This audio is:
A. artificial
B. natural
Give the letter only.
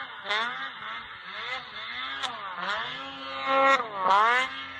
B